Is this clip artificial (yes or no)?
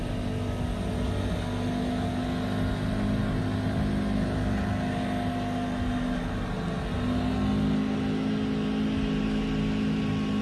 no